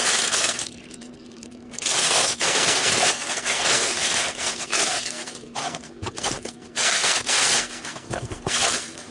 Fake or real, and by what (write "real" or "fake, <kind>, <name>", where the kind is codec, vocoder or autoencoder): fake, codec, SNAC